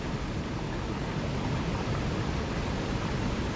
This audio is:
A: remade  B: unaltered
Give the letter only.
B